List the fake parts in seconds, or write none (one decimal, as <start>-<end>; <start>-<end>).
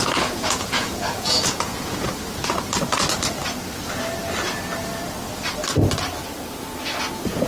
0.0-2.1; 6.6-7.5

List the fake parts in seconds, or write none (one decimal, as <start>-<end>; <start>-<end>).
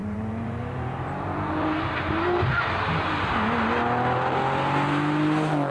0.0-3.4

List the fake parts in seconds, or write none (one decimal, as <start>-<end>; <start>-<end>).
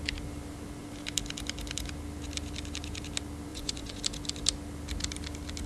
3.5-4.0